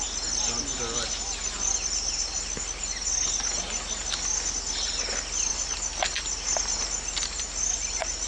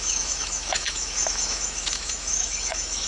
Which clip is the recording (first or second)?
first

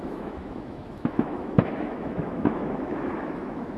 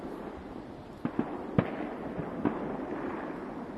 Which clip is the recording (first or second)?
second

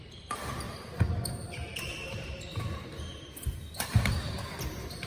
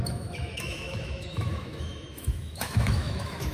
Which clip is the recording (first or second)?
first